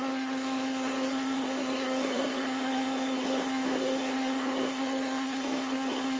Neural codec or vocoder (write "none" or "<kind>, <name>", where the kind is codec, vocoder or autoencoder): codec, SNAC